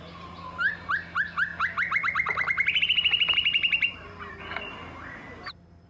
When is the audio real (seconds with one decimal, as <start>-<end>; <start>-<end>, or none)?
0.0-1.5; 4.3-5.9